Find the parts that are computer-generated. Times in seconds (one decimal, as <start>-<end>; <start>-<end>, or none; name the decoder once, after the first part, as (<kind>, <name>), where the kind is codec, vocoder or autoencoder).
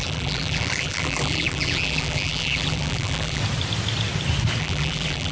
0.0-3.4 (vocoder, BigVGAN v2); 4.6-5.3